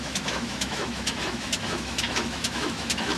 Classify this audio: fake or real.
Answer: fake